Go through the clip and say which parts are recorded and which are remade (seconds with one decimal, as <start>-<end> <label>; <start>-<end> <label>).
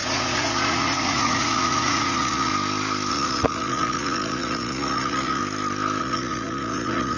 0.0-2.5 remade; 2.5-3.1 recorded; 3.1-5.4 remade; 5.4-6.0 recorded; 6.0-7.2 remade